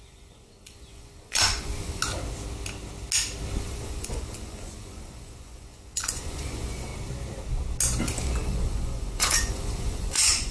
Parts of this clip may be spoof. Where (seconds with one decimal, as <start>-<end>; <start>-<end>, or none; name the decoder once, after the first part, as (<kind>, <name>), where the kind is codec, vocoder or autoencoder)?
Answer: 0.0-2.0 (vocoder, Vocos); 3.6-6.9; 8.0-10.5